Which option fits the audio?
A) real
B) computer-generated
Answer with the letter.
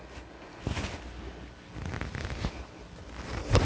A